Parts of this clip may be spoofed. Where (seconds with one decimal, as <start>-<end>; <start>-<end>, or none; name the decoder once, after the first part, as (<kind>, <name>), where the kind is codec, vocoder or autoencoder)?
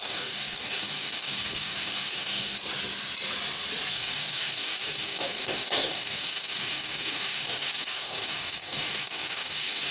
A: 0.0-2.6 (codec, DAC); 3.9-9.9